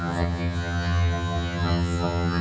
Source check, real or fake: fake